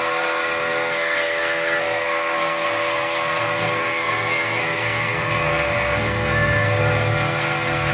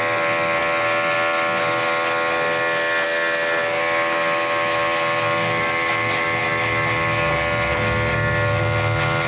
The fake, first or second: first